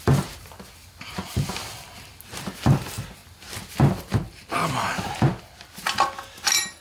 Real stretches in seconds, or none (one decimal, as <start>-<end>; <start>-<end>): 0.0-6.8